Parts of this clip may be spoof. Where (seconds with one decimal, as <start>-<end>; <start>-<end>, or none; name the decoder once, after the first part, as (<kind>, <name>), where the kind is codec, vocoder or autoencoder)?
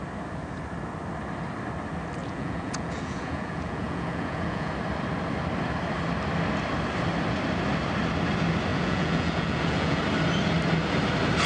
2.2-4.7 (vocoder, Vocos); 8.7-10.0